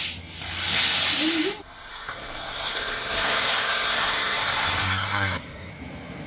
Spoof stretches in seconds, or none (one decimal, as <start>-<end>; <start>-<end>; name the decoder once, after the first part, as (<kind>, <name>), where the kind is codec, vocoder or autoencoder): 1.9-5.7 (codec, SNAC)